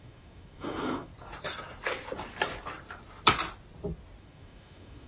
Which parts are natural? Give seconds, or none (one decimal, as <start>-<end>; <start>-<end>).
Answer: 1.1-4.2